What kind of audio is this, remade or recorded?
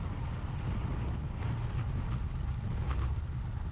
recorded